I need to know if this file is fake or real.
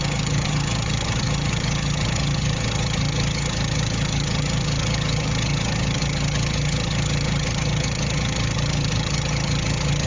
fake